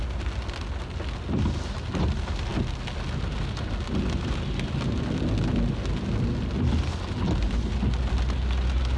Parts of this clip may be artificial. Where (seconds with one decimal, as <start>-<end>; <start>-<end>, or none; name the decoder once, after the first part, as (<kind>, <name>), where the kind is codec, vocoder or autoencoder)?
none